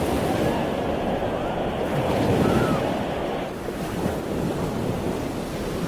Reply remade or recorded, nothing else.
recorded